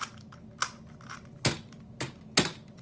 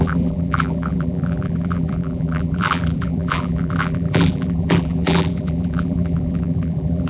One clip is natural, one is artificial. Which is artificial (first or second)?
second